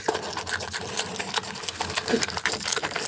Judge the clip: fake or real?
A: real